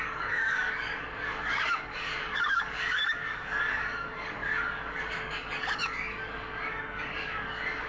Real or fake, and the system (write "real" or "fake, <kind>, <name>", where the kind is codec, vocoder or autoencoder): fake, codec, DAC